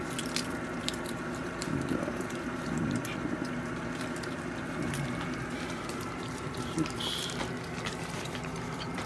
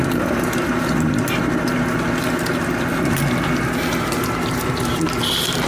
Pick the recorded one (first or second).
second